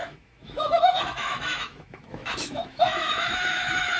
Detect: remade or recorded remade